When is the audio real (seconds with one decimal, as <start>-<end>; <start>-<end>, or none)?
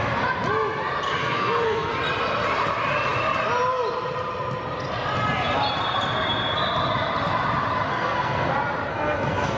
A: 0.0-1.2; 1.9-7.9; 8.5-8.9